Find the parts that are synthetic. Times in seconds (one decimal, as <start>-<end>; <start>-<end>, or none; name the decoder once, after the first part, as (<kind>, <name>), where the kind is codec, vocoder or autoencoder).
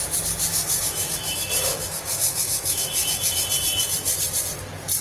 0.5-3.5 (autoencoder, DAC-VAE)